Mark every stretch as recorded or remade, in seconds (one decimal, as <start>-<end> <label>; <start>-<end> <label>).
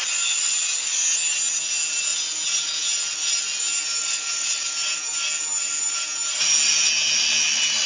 0.0-7.9 recorded